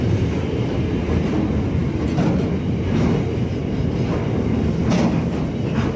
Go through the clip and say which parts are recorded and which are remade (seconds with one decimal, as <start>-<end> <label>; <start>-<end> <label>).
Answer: 0.0-6.0 recorded